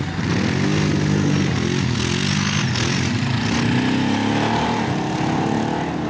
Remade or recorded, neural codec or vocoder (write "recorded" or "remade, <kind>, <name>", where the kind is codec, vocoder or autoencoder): recorded